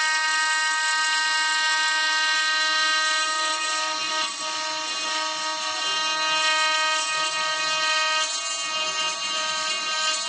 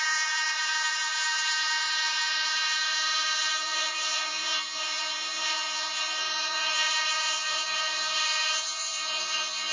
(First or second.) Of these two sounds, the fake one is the second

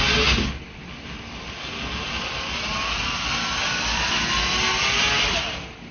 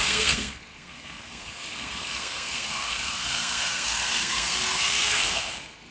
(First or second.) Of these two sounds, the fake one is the second